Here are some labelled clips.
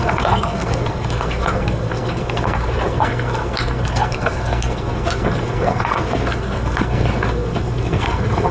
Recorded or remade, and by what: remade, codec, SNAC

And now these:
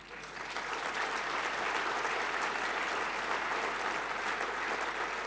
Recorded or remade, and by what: recorded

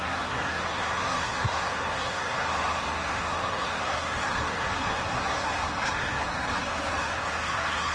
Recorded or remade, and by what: remade, codec, SNAC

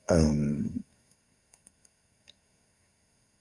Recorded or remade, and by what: remade, codec, SNAC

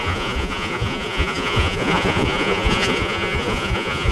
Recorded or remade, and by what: remade, vocoder, Vocos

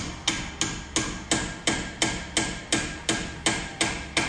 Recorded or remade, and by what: recorded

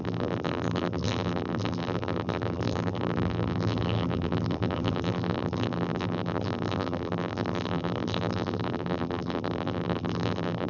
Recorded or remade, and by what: remade, vocoder, BigVGAN v2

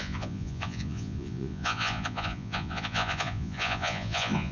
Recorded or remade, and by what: remade, vocoder, Vocos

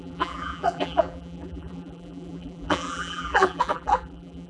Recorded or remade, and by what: remade, vocoder, BigVGAN v2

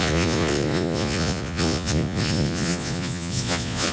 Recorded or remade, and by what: remade, vocoder, Vocos